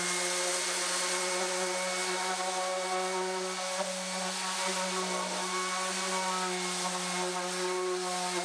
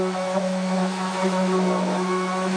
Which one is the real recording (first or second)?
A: first